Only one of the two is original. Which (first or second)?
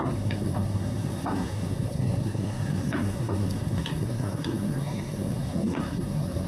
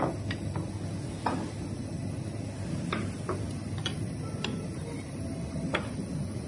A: second